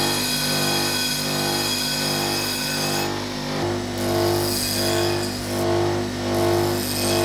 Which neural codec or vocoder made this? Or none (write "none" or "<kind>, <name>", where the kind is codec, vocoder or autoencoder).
none